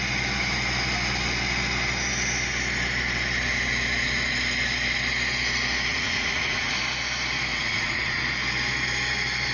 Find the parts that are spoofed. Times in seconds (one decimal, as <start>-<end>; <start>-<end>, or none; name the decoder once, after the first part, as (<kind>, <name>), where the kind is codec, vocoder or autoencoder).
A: 5.9-6.7 (vocoder, Vocos); 7.5-8.2